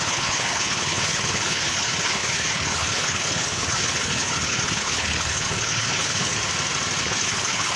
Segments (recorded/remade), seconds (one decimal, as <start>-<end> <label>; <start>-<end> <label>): 0.0-6.4 remade; 6.4-7.0 recorded; 7.0-7.8 remade